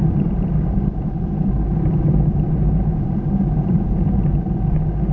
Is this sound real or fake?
fake